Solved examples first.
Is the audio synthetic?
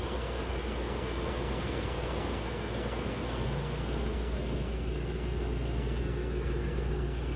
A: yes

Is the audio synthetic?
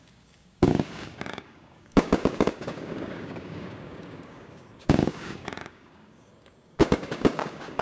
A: yes